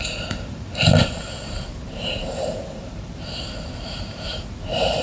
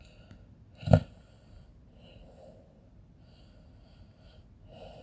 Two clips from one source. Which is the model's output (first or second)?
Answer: first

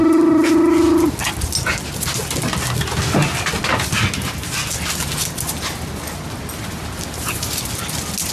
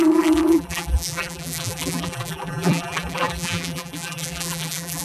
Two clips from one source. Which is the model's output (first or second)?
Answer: second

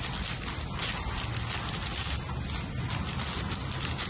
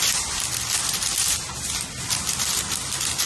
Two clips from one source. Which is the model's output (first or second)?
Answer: second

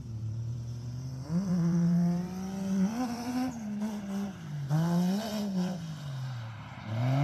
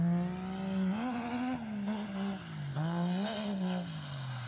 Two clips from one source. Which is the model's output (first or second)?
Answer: first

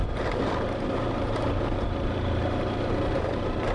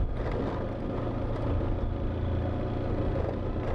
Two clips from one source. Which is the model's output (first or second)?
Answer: first